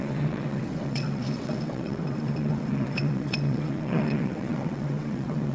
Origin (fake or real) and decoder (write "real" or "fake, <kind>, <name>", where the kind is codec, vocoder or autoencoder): fake, vocoder, WaveNeXt